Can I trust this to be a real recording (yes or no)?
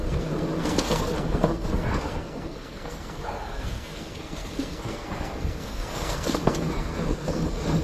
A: no